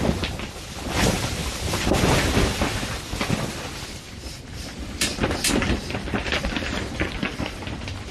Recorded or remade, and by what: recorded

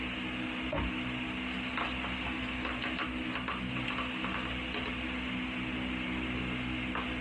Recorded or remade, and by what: recorded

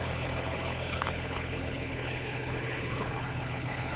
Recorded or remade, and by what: remade, codec, HILCodec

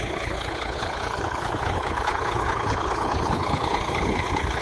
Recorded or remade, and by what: remade, codec, HILCodec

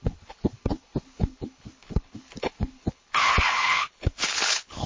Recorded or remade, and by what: remade, codec, HILCodec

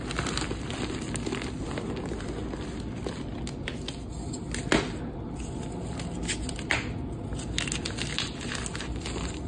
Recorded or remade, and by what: recorded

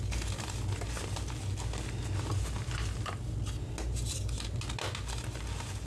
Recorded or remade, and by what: recorded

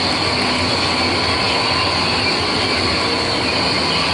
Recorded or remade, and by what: recorded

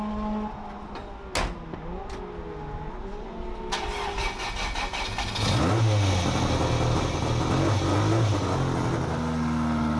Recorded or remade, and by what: recorded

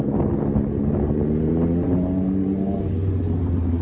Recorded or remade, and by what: recorded